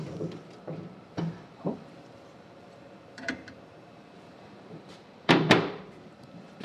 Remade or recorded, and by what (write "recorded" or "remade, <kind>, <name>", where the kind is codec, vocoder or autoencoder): remade, vocoder, BigVGAN v2